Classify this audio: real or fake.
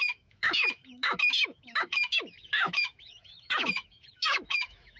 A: fake